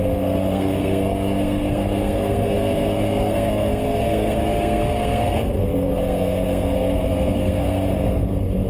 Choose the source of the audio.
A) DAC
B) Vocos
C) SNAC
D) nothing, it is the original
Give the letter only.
C